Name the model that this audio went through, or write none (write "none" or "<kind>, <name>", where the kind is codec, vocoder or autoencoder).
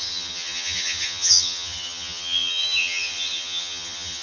vocoder, HiFi-GAN